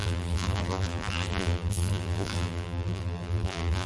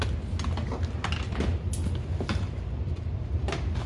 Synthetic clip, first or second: first